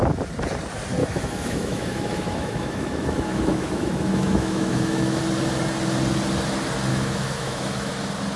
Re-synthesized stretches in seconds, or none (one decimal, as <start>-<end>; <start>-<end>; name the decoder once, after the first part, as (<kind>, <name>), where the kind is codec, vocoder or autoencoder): 1.0-5.2 (autoencoder, DAC-VAE); 6.9-7.9

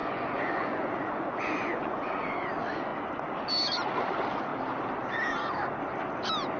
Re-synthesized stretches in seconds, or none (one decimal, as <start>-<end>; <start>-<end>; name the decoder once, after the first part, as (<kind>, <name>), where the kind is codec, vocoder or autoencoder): 0.0-2.5 (vocoder, Vocos)

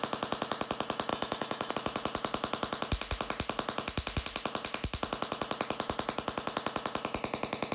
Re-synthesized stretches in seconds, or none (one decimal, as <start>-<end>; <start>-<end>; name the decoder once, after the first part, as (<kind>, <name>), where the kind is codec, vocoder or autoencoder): 1.1-1.7 (autoencoder, DAC-VAE)

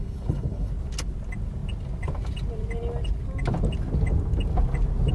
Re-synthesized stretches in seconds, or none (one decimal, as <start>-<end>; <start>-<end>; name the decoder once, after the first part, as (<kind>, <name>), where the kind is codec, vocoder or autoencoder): 0.0-0.7 (codec, HILCodec)

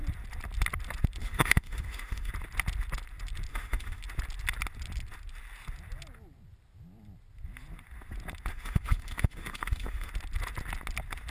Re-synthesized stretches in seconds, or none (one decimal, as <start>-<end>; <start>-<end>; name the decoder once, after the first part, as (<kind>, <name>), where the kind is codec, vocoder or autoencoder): 1.2-2.3 (autoencoder, DAC-VAE); 3.5-4.0; 8.5-10.1

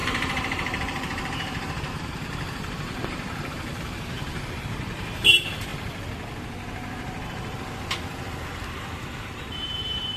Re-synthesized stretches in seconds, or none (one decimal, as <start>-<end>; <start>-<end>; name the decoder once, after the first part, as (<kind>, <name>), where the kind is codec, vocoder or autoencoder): 0.0-5.7 (vocoder, BigVGAN v2); 9.2-10.2

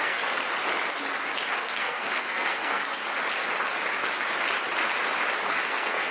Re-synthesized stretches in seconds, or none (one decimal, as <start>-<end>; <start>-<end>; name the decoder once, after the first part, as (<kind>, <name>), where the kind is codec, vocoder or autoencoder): 0.0-0.4 (codec, SNAC); 1.5-3.0; 5.5-6.1